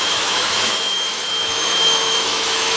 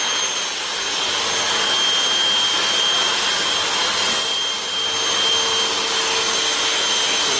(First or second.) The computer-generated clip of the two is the first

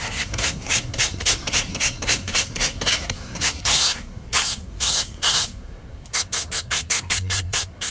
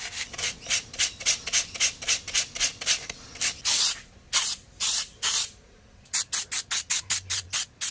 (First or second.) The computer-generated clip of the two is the first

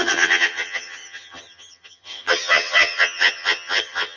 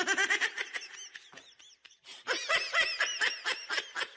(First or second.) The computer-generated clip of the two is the first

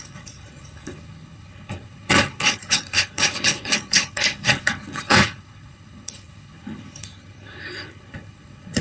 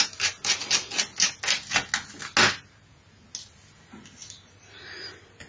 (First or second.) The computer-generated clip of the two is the first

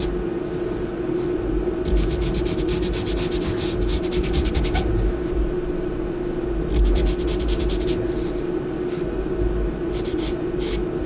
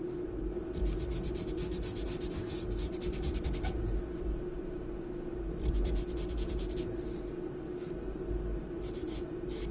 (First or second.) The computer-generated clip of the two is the second